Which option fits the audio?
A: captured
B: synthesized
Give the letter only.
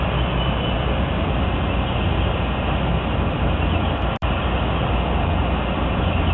A